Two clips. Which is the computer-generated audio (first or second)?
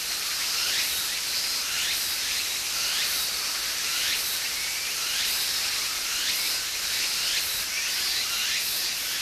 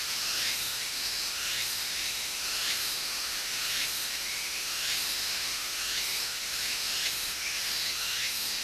second